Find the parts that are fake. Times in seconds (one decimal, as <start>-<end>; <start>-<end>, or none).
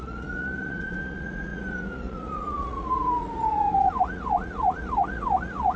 0.0-5.8